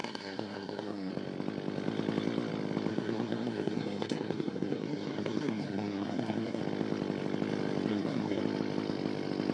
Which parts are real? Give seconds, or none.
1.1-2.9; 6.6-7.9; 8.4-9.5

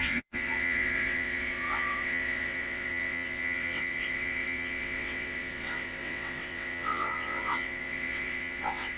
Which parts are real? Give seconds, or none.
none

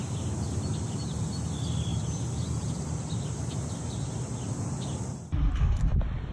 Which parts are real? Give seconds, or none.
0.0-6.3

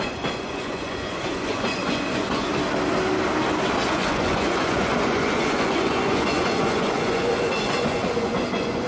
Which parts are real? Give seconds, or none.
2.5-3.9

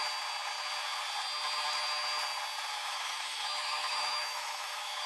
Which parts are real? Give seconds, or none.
0.0-2.8

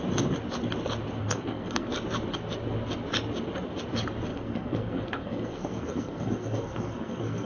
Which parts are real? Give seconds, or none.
0.0-1.2; 1.9-4.3

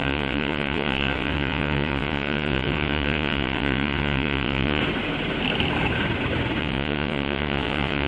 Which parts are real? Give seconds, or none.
4.8-6.6